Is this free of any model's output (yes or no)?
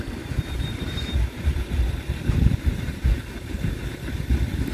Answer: no